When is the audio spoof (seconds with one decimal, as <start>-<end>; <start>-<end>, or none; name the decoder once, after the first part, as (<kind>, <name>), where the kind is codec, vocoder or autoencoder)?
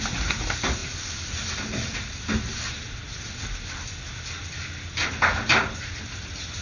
none